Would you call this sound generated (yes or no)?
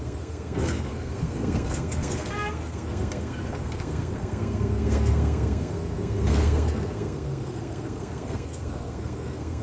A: yes